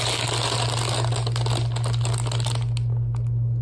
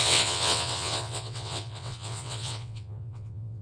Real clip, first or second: first